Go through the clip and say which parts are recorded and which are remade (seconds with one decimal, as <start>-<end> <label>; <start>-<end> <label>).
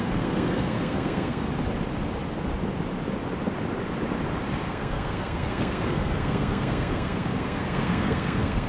0.0-1.5 remade; 1.5-4.7 recorded; 4.7-8.7 remade